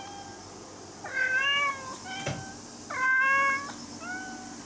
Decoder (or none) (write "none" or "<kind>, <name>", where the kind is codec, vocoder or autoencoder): none